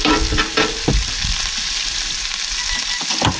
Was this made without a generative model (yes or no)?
yes